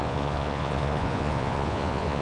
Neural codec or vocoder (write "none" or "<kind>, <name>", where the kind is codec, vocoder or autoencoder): vocoder, Vocos